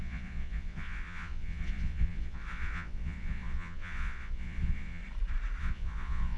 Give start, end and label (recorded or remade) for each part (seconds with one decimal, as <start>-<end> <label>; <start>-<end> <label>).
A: 0.0-5.0 remade; 5.0-5.6 recorded; 5.6-6.4 remade